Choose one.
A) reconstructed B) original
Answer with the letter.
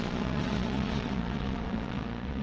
A